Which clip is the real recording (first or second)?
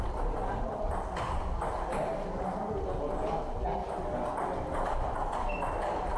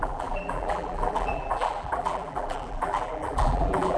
first